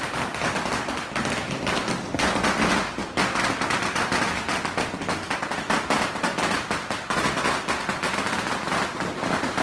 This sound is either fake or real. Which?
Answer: real